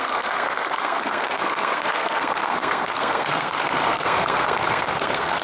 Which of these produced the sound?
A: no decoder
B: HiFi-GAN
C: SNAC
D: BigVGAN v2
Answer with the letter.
C